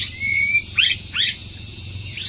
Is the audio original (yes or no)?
no